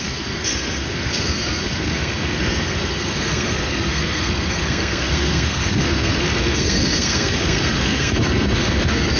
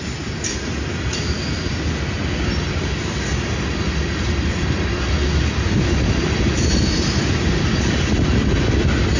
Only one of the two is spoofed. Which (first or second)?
first